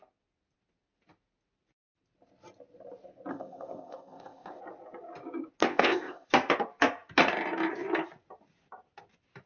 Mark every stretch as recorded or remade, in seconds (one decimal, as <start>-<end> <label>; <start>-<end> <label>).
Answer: 0.0-3.3 recorded; 3.3-4.6 remade; 4.6-5.7 recorded; 5.7-6.3 remade; 6.3-9.5 recorded